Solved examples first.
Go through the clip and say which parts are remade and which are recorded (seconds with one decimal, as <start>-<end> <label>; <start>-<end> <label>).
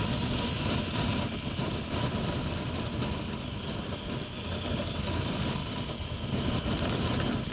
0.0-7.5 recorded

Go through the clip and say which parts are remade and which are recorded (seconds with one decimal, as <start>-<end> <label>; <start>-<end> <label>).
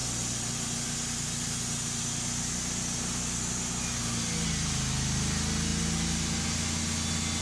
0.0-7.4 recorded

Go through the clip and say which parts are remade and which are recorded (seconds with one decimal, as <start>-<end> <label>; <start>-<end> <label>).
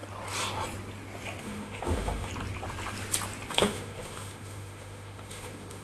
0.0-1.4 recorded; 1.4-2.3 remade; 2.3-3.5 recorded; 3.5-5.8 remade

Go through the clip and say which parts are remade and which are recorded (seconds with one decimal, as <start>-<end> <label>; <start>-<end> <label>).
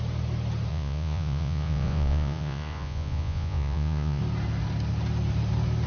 0.0-0.7 recorded; 0.7-4.2 remade; 4.2-5.9 recorded